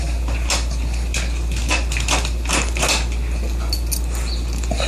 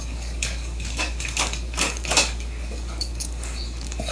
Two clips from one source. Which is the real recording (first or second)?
first